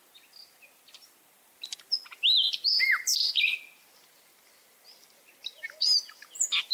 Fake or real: real